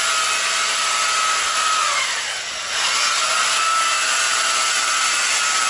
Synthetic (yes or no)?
no